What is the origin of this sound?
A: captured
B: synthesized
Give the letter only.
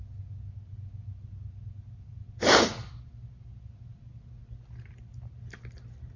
A